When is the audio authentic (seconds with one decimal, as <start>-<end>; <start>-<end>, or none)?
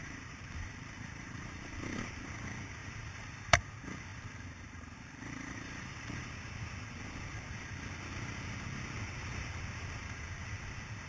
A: 1.6-2.8; 3.6-4.1; 6.3-11.1